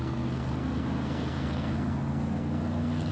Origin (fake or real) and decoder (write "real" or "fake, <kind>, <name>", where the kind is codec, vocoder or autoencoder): fake, codec, SNAC